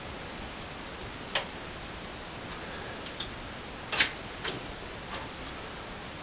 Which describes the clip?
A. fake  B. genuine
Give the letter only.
B